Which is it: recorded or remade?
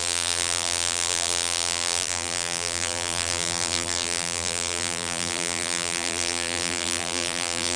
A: remade